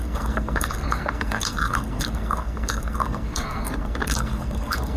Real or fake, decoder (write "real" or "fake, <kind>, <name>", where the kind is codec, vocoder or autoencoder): fake, codec, SNAC